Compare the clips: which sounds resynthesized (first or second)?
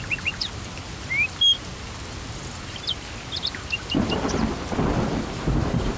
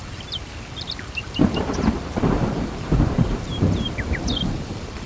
second